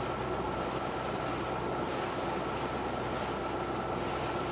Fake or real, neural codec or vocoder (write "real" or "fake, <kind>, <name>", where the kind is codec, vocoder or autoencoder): real